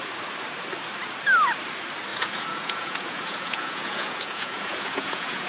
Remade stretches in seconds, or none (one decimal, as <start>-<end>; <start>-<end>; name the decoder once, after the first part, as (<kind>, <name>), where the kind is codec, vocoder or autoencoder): 2.1-5.5 (vocoder, Vocos)